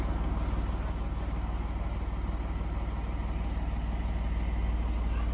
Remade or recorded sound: recorded